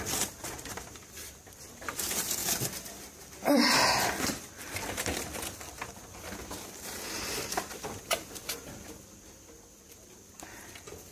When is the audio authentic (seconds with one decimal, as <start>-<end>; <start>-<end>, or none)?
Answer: 0.0-2.4; 5.4-11.1